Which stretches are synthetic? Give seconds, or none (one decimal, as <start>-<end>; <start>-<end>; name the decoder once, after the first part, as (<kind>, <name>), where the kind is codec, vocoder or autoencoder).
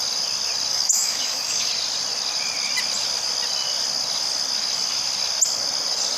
0.7-1.7 (codec, DAC)